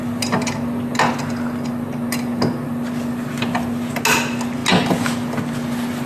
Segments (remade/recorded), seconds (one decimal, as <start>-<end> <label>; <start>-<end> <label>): 0.0-6.1 recorded